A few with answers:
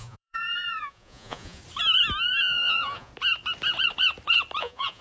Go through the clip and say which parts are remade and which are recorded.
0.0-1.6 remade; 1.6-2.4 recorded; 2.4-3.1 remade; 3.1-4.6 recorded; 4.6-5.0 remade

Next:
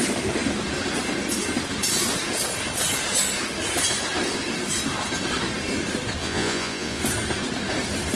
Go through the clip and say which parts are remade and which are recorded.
0.0-6.2 recorded; 6.2-7.0 remade; 7.0-8.2 recorded

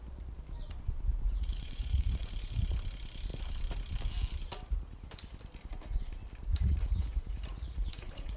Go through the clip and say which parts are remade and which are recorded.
0.0-1.1 recorded; 1.1-2.3 remade; 2.3-6.5 recorded; 6.5-8.4 remade

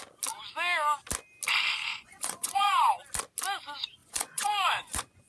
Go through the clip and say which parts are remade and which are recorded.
0.0-1.9 recorded; 1.9-2.9 remade; 2.9-4.0 recorded; 4.0-5.3 remade